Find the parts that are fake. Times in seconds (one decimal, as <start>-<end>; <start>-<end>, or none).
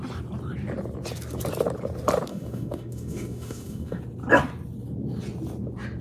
2.3-4.0